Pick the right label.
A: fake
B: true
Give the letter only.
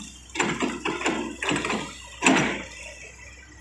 B